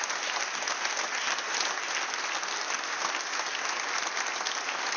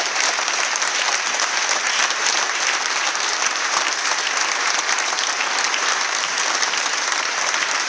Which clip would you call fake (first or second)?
second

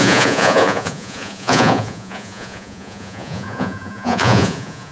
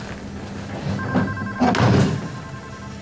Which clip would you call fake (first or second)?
first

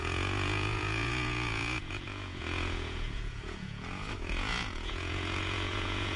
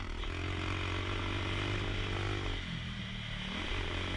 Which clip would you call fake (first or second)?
first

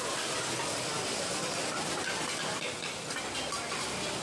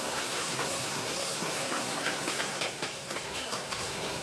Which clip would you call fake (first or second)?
second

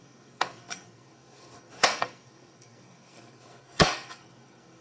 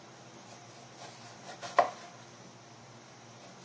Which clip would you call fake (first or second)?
first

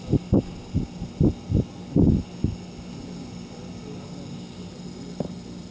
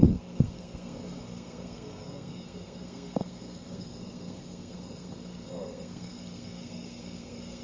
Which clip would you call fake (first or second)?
second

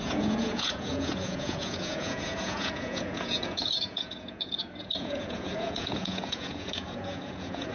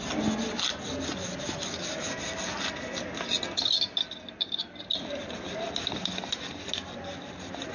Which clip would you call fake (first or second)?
first